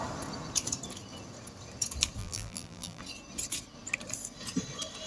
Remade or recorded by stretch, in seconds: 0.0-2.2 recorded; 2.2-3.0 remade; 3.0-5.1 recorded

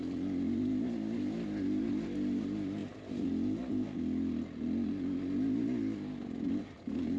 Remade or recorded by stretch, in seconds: 0.0-7.2 recorded

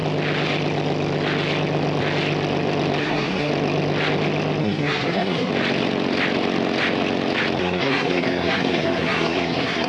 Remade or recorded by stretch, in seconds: 0.0-3.0 recorded; 3.0-3.5 remade; 3.5-4.6 recorded; 4.6-5.5 remade; 5.5-7.6 recorded; 7.6-9.9 remade